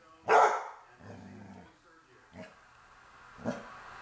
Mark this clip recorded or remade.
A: recorded